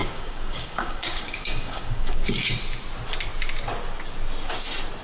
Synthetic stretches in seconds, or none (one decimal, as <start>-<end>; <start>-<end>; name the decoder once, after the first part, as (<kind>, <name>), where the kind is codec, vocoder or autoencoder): 0.0-2.6 (codec, DAC)